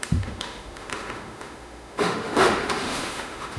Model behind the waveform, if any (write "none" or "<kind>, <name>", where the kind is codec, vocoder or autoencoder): autoencoder, DAC-VAE